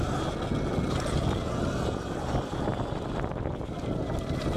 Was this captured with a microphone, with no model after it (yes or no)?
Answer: yes